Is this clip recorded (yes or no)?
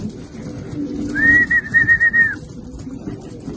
yes